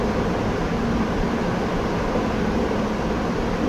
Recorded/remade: recorded